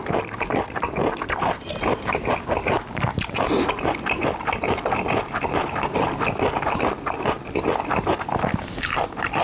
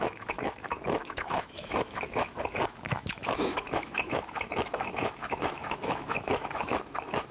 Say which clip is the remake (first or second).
second